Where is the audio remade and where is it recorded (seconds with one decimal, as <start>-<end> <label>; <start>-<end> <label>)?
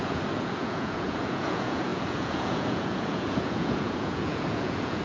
0.0-5.0 remade